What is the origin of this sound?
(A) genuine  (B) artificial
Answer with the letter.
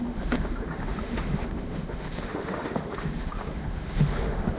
B